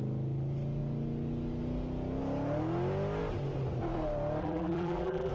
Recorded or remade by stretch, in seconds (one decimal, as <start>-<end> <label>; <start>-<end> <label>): 0.0-4.4 recorded; 4.4-5.3 remade

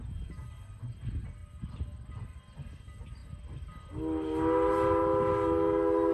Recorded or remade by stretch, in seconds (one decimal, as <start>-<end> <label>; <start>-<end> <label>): 0.0-6.1 recorded

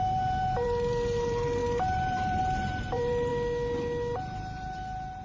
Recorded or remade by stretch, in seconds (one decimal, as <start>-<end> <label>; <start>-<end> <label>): 0.0-3.3 remade; 3.3-5.2 recorded